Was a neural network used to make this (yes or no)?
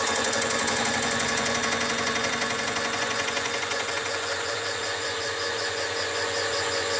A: yes